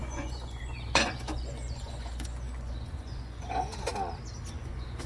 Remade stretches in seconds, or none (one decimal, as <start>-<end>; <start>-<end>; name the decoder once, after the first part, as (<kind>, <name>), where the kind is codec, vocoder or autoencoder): 0.0-3.9 (vocoder, Vocos); 4.5-5.1